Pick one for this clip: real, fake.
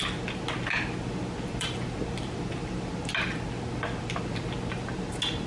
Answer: real